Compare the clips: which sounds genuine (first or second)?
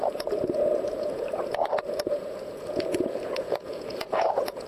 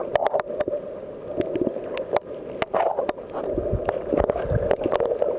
second